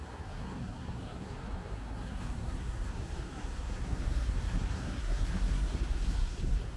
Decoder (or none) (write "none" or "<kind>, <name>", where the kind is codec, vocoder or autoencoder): codec, SNAC